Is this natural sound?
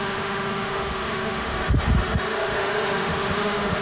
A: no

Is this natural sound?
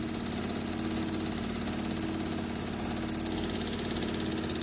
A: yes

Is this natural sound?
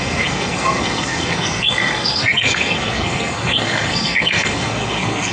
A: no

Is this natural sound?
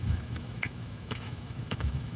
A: no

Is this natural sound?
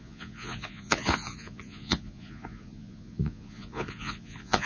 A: no